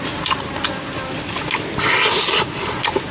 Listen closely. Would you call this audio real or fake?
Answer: real